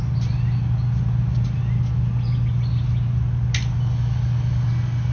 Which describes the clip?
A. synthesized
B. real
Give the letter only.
B